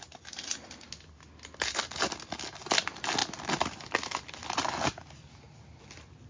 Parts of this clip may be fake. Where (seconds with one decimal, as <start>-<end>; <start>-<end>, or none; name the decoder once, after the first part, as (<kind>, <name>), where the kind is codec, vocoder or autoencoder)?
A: none